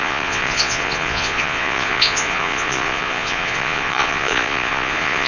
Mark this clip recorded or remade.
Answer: remade